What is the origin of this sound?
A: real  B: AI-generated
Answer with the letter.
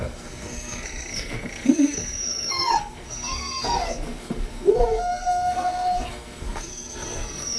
B